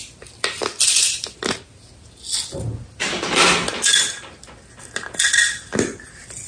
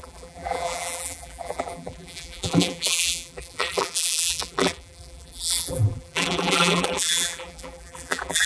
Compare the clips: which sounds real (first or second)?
first